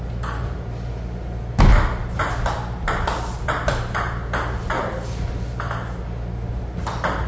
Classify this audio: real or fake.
real